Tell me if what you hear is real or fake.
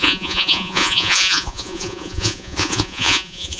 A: fake